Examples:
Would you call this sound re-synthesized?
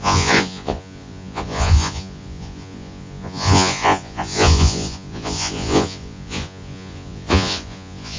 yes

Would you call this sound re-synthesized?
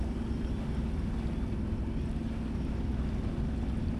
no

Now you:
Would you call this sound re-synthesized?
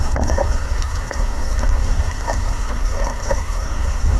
yes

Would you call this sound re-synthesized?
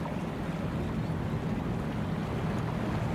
no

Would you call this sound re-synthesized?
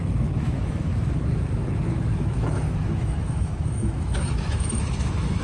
yes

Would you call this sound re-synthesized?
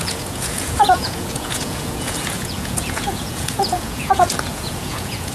yes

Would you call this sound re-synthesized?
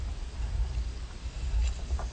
no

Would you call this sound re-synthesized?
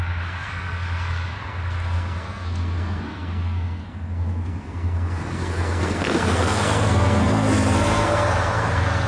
yes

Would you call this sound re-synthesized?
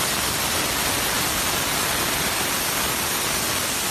no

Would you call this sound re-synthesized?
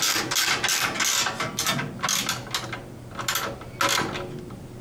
no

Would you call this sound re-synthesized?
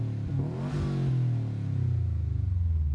no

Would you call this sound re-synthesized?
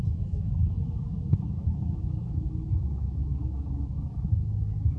yes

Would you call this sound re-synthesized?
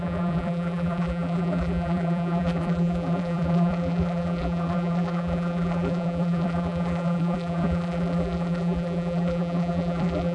yes